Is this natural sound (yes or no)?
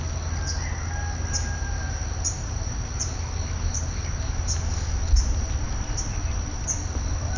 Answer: yes